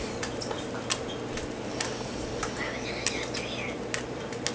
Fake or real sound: real